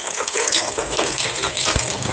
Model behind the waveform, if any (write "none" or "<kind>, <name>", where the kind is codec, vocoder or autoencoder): codec, SNAC